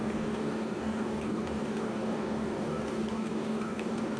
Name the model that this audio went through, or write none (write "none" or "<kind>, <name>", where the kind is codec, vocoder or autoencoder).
codec, DAC